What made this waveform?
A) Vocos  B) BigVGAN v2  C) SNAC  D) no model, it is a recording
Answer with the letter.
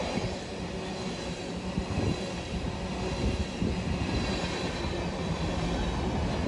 D